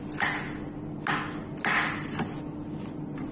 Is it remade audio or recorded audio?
recorded